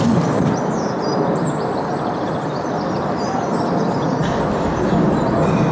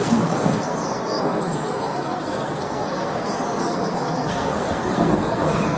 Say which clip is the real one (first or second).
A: first